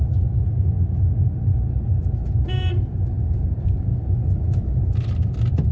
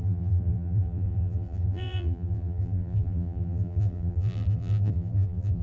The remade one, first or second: second